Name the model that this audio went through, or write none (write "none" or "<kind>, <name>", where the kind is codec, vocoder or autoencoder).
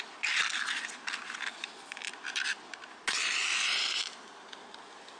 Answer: none